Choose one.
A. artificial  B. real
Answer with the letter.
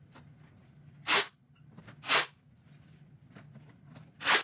B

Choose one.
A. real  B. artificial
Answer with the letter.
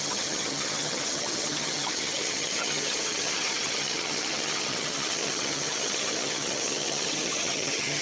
B